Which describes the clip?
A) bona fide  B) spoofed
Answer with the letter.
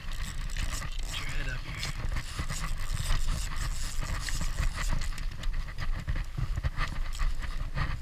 A